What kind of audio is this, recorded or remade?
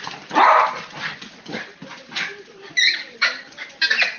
recorded